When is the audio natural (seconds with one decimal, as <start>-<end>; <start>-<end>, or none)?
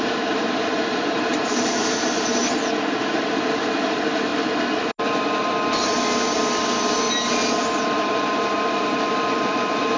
2.4-3.0; 4.3-7.3